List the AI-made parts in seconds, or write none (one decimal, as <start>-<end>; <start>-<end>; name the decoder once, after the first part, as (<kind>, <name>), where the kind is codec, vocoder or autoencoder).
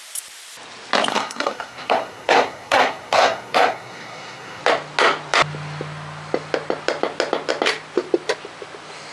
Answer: 1.1-4.6 (codec, SNAC)